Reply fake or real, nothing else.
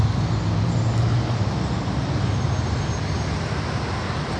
real